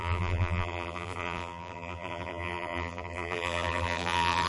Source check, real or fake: fake